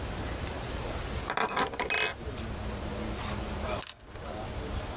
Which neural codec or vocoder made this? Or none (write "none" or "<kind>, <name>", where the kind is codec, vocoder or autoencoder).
none